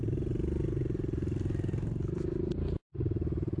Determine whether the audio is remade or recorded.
recorded